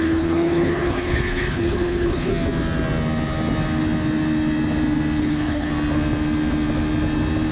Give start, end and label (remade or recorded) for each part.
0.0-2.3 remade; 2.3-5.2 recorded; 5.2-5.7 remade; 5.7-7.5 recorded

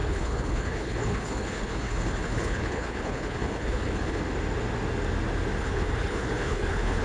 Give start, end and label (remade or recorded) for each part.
0.0-4.2 remade; 4.2-5.6 recorded; 5.6-7.0 remade

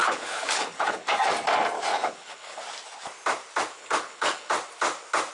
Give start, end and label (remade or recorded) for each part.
0.0-1.1 remade; 1.1-1.9 recorded; 1.9-2.6 remade; 2.6-3.8 recorded; 3.8-4.5 remade; 4.5-5.3 recorded

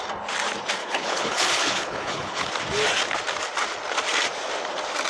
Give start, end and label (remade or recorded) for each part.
0.0-0.8 recorded; 0.8-2.5 remade; 2.5-5.1 recorded

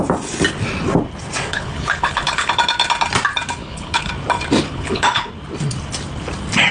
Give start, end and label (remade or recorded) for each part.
0.0-1.5 recorded; 1.5-2.5 remade; 2.5-3.6 recorded; 3.6-4.1 remade; 4.1-4.7 recorded; 4.7-5.3 remade; 5.3-6.7 recorded